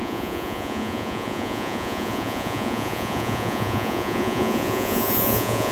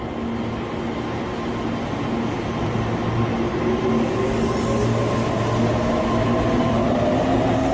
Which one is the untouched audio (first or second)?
second